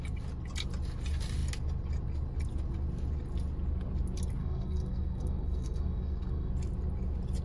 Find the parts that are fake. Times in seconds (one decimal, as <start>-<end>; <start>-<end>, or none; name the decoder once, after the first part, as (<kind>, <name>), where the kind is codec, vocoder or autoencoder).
4.4-6.5 (codec, SNAC)